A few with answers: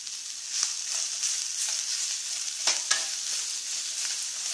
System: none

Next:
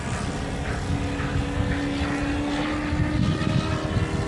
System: none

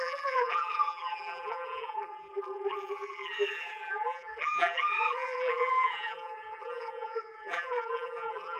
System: vocoder, BigVGAN v2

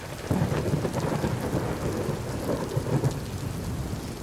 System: none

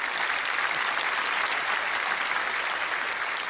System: none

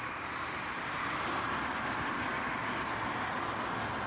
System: none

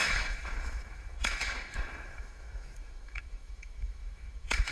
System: autoencoder, DAC-VAE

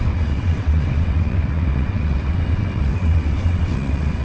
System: vocoder, WaveNeXt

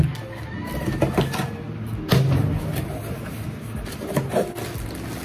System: none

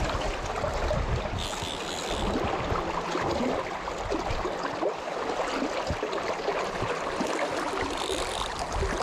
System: none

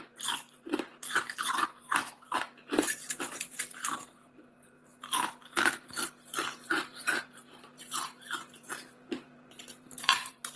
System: vocoder, BigVGAN v2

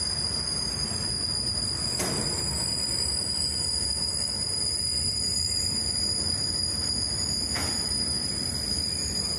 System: none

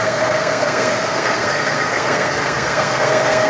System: codec, SNAC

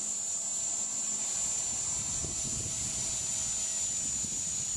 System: none